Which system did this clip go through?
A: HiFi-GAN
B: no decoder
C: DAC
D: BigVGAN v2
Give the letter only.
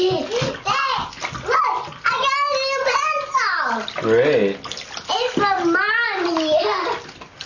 B